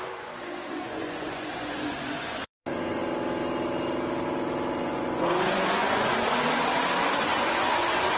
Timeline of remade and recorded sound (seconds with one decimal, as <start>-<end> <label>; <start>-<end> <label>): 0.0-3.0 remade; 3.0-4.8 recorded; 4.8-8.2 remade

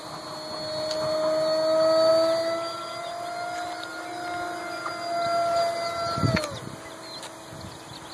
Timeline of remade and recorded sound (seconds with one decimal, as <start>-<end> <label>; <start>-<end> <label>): 0.0-8.1 recorded

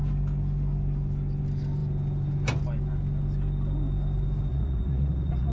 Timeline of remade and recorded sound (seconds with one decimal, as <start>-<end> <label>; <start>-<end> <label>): 0.0-4.5 recorded; 4.5-5.5 remade

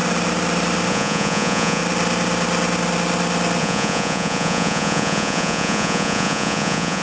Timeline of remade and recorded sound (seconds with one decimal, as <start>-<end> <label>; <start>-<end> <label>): 0.0-0.9 recorded; 0.9-1.8 remade; 1.8-3.6 recorded; 3.6-7.0 remade

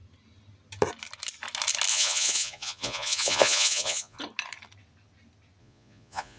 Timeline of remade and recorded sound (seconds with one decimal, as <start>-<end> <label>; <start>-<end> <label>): 0.0-1.9 recorded; 1.9-4.2 remade; 4.2-5.6 recorded; 5.6-6.4 remade

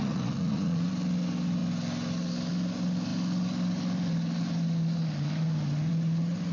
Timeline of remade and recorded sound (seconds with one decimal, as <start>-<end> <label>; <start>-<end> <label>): 0.0-0.9 remade; 0.9-6.5 recorded

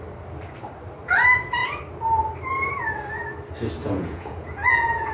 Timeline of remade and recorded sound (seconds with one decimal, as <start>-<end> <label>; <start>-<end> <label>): 0.0-3.8 recorded; 3.8-5.1 remade